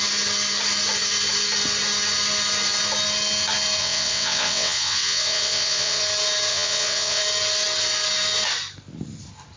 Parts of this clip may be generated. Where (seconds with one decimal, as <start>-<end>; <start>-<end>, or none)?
3.8-6.0; 6.5-7.2